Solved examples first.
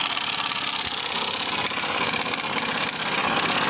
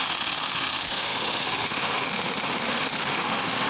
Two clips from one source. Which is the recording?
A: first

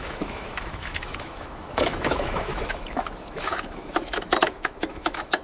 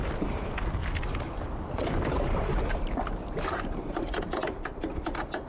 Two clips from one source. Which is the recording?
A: second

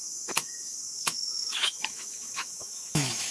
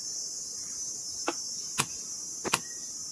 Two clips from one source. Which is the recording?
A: second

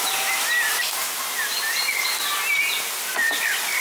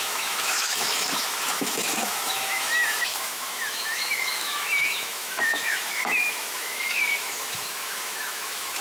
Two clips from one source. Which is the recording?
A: first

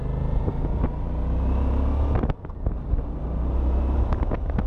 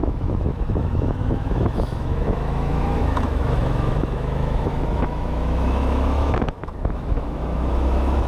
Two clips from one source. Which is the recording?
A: first